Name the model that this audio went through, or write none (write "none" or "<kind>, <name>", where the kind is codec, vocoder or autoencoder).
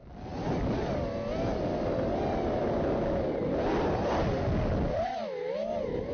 none